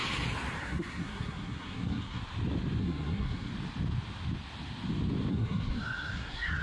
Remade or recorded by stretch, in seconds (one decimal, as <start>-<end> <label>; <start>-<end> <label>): 0.0-0.6 recorded; 0.6-2.2 remade; 2.2-2.8 recorded; 2.8-3.5 remade; 3.5-5.3 recorded; 5.3-6.6 remade